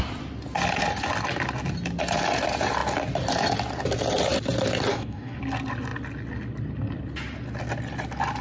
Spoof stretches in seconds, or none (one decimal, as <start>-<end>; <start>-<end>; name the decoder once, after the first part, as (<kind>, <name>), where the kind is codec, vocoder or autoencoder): 4.9-5.4 (codec, DAC)